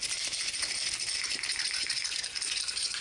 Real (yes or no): yes